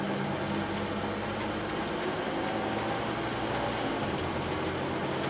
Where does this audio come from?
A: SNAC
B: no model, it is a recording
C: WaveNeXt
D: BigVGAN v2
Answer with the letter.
B